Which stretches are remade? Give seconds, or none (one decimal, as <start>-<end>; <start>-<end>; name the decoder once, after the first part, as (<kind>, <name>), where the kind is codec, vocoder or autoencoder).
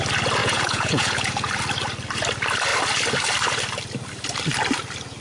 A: 0.4-1.5 (vocoder, Vocos)